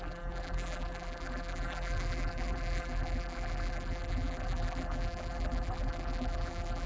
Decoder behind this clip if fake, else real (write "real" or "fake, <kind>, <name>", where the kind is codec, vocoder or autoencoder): fake, vocoder, BigVGAN v2